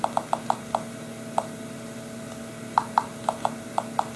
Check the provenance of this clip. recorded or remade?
recorded